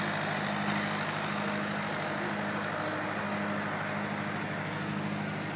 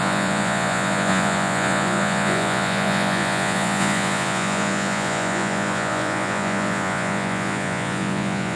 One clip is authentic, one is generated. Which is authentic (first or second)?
first